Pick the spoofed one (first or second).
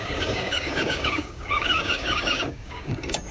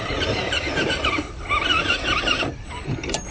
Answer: first